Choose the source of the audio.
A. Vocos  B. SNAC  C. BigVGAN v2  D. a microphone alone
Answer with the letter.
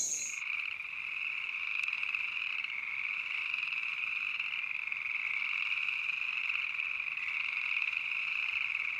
D